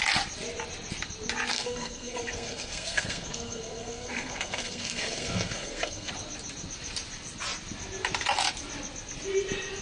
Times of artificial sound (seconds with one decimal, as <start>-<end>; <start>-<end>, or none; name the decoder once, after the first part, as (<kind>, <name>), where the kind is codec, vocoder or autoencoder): 1.5-6.1 (codec, SNAC)

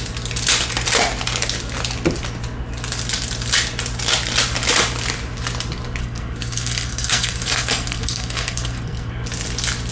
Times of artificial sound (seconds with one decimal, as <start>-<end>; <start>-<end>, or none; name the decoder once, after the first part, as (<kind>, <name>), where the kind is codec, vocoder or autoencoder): 6.0-9.1 (codec, SNAC)

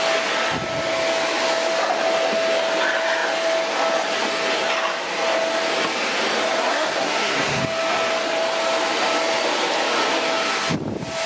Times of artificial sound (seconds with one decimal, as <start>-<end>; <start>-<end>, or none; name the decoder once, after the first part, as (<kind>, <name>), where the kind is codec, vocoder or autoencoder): 6.6-7.6 (codec, SNAC)

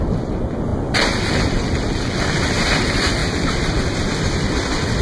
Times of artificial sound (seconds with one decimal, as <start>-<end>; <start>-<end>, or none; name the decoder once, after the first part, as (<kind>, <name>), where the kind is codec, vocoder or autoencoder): none